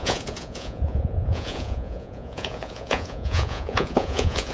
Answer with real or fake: fake